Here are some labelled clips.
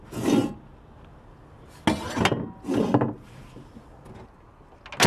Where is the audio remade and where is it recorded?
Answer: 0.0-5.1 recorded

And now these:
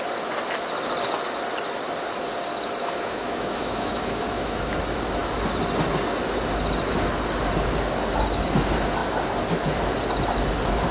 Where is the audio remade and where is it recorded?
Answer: 0.0-2.8 recorded; 2.8-4.7 remade; 4.7-10.9 recorded

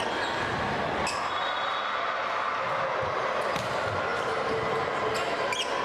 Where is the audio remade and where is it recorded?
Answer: 0.0-5.8 recorded

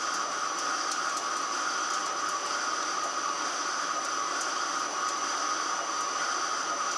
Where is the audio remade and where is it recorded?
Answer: 0.0-7.0 recorded

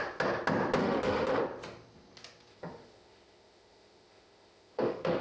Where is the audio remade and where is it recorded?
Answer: 0.0-0.8 recorded; 0.8-1.4 remade; 1.4-2.5 recorded; 2.5-5.2 remade

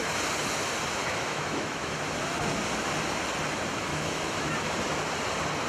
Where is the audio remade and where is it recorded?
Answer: 0.0-1.0 recorded; 1.0-2.0 remade; 2.0-3.9 recorded; 3.9-4.5 remade; 4.5-5.7 recorded

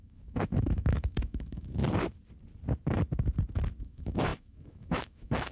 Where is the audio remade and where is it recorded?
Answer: 0.0-1.8 remade; 1.8-3.8 recorded; 3.8-5.5 remade

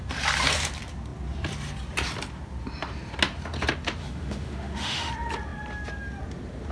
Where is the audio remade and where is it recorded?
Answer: 0.0-4.0 recorded; 4.0-5.1 remade; 5.1-6.7 recorded